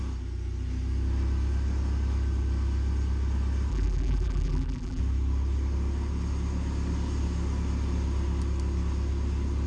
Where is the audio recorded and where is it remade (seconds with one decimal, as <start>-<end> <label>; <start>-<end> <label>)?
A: 0.0-3.7 recorded; 3.7-5.0 remade; 5.0-9.7 recorded